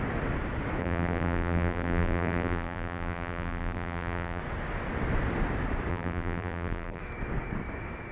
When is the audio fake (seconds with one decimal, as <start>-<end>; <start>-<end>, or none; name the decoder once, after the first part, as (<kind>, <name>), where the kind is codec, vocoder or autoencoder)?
0.8-4.4 (vocoder, BigVGAN v2); 5.9-7.0